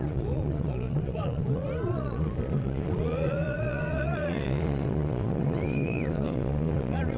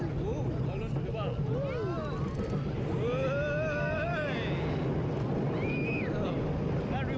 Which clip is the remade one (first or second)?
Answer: first